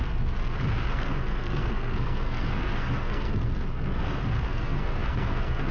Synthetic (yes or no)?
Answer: yes